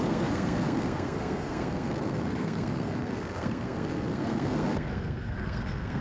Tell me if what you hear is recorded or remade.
remade